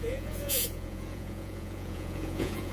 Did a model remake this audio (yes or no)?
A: yes